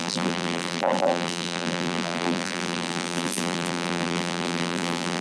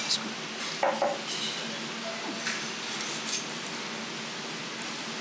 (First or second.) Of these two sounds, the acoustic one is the second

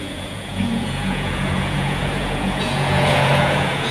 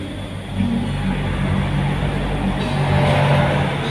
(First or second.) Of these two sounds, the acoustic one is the second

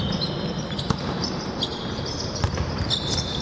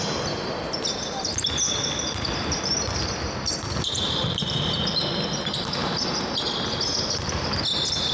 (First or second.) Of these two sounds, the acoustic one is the second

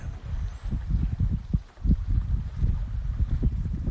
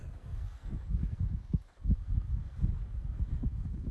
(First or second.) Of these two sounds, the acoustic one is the first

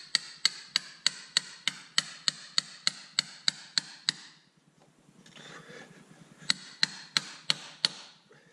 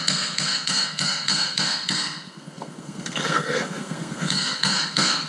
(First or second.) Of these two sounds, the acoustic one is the first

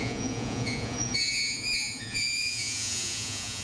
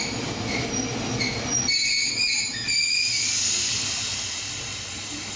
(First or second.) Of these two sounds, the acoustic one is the second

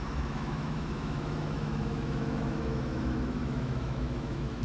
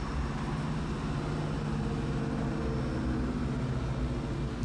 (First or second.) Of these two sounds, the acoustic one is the second